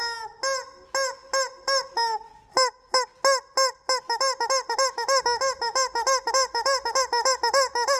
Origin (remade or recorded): recorded